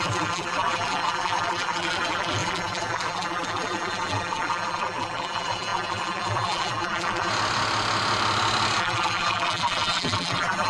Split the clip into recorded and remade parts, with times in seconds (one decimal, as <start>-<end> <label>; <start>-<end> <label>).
0.0-7.3 remade; 7.3-8.8 recorded; 8.8-10.7 remade